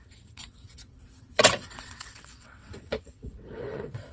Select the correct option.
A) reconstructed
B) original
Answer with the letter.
A